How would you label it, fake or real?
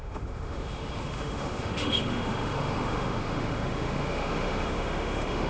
fake